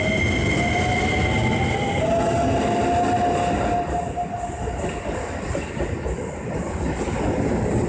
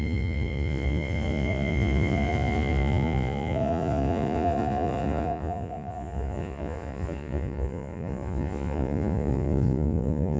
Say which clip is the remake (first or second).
second